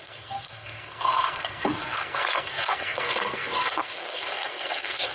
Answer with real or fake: fake